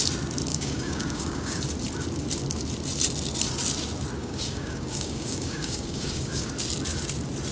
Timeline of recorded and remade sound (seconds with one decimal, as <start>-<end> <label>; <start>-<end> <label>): 0.0-0.5 recorded; 0.5-1.6 remade; 1.6-4.2 recorded; 4.2-6.5 remade; 6.5-7.5 recorded

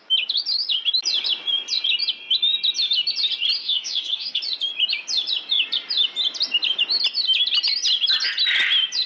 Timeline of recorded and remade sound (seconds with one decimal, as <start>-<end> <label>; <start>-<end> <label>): 0.0-3.6 recorded; 3.6-4.4 remade; 4.4-9.1 recorded

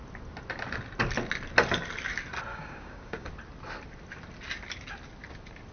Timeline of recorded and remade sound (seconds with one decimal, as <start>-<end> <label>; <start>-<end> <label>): 0.0-2.5 recorded; 2.5-3.3 remade; 3.3-5.7 recorded

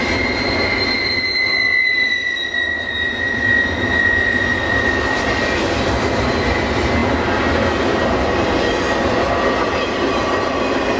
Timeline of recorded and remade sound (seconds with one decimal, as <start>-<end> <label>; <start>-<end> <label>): 0.0-11.0 recorded

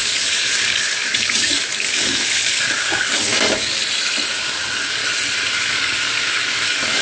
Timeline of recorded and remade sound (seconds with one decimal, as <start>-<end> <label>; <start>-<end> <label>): 0.0-3.8 remade; 3.8-4.3 recorded; 4.3-5.0 remade; 5.0-5.5 recorded; 5.5-7.0 remade